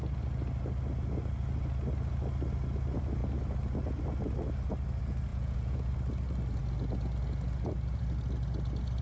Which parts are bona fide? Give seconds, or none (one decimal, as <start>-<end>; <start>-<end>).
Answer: 0.0-5.3; 5.9-9.0